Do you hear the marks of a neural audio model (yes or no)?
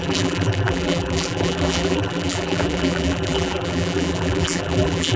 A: yes